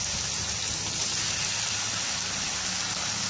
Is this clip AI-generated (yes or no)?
no